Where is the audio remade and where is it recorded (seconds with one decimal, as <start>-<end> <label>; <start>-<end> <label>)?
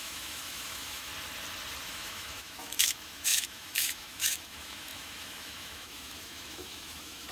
0.0-1.1 remade; 1.1-1.9 recorded; 1.9-7.3 remade